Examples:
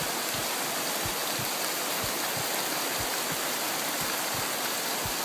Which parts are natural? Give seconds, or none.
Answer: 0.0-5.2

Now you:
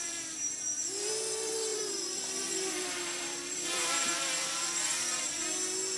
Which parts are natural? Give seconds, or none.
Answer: 1.1-1.7; 5.3-6.0